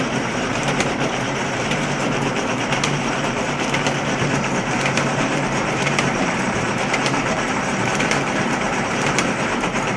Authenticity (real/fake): fake